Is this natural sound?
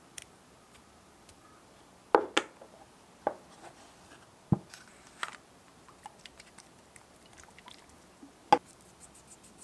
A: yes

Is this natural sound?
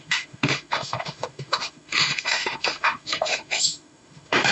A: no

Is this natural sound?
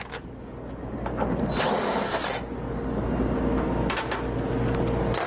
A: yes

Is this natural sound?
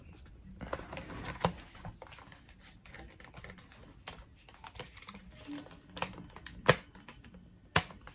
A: yes